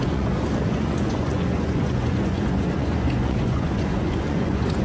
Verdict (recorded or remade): remade